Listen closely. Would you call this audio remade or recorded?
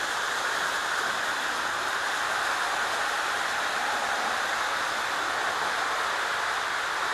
remade